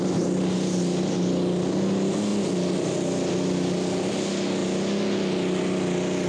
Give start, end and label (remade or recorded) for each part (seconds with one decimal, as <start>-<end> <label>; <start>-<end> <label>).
0.0-6.3 recorded